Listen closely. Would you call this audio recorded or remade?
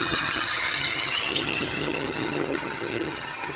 remade